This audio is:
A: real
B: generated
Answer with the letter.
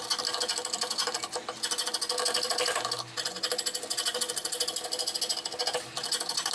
A